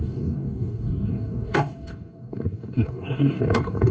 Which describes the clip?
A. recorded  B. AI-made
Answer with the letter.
B